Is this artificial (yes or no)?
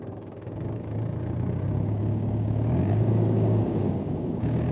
yes